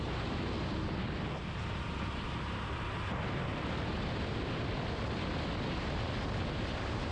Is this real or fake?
real